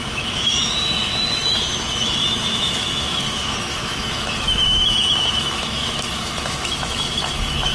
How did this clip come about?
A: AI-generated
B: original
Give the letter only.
A